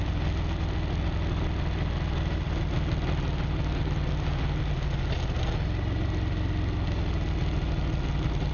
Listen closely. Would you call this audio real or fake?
real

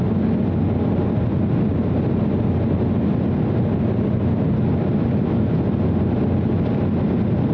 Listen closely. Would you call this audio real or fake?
real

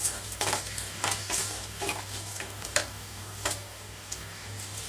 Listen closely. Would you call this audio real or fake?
fake